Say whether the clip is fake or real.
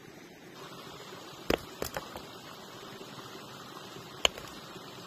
real